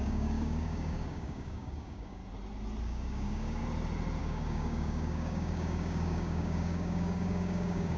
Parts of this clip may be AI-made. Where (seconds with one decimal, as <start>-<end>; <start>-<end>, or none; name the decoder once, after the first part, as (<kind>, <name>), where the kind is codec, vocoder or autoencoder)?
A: 0.0-2.2 (codec, DAC); 2.8-3.6; 4.2-8.0